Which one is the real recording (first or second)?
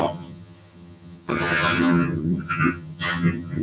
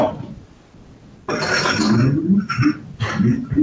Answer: second